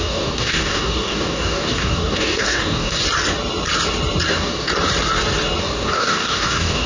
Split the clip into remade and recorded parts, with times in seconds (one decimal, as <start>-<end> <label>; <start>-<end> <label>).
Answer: 0.0-3.0 remade; 3.0-4.3 recorded; 4.3-4.7 remade; 4.7-5.6 recorded; 5.6-6.9 remade